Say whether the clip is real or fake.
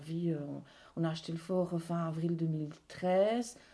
real